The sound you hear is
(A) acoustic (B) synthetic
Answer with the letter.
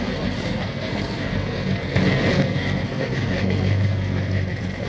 B